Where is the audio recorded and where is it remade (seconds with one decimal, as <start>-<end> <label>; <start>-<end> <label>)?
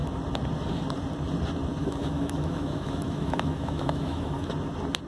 0.0-1.8 recorded; 1.8-4.5 remade; 4.5-5.1 recorded